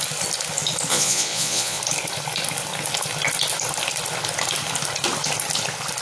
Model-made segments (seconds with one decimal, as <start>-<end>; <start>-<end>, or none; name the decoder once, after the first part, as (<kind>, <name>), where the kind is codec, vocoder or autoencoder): 0.9-1.8 (vocoder, Vocos)